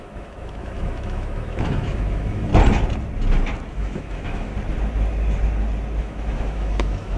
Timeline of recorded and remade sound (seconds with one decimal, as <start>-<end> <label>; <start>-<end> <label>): 0.0-2.5 remade; 2.5-3.7 recorded; 3.7-4.5 remade; 4.5-6.0 recorded; 6.0-7.2 remade